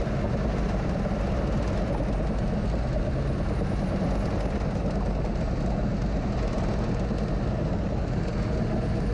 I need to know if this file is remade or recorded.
recorded